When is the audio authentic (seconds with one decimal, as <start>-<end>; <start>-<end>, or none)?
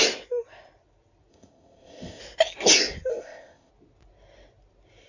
0.0-1.3; 2.2-3.1; 3.7-5.1